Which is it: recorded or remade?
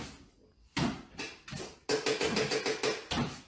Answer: recorded